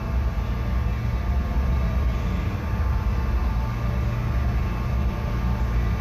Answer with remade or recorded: recorded